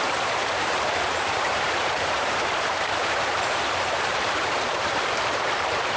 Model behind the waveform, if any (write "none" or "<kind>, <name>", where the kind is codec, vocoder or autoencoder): vocoder, BigVGAN v2